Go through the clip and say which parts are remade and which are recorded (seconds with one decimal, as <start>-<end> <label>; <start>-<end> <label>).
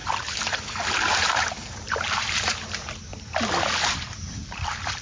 0.0-3.1 remade; 3.1-4.1 recorded; 4.1-5.0 remade